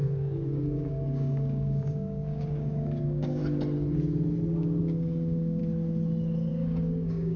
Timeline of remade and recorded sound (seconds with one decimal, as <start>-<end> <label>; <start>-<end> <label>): 0.0-3.4 remade; 3.4-4.8 recorded; 4.8-5.6 remade; 5.6-6.5 recorded; 6.5-7.4 remade